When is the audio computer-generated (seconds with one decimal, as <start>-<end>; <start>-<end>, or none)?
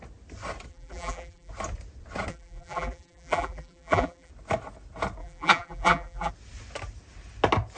0.7-1.5; 2.3-4.3; 5.2-6.3